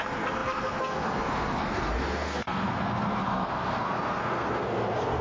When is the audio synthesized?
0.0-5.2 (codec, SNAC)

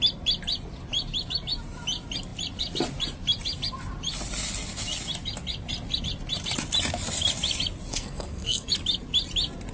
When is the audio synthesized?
7.9-8.7 (codec, SNAC)